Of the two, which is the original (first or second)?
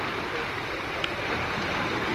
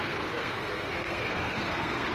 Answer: first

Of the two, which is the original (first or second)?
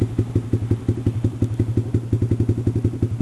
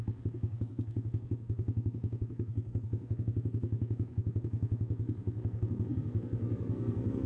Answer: first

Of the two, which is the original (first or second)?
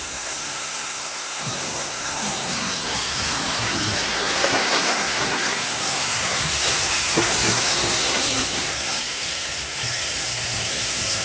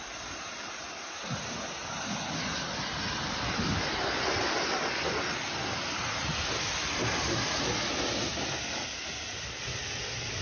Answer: second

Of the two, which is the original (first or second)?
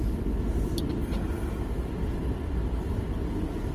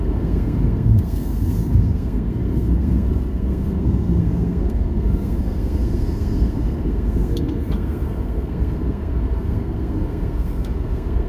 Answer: first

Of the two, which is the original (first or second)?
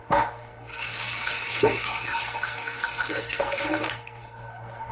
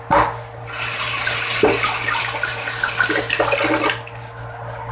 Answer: second